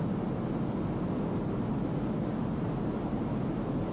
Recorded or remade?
recorded